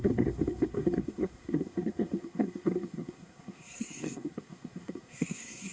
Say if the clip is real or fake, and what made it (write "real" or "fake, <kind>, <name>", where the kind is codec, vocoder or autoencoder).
fake, codec, SNAC